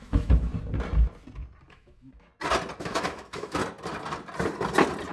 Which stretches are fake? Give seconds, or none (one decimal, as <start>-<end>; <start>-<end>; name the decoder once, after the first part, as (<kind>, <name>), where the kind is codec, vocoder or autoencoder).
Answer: 0.0-0.5 (autoencoder, DAC-VAE); 1.7-2.3; 2.8-3.6